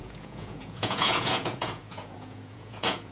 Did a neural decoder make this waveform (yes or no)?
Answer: yes